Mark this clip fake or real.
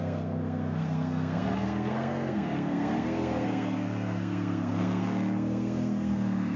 fake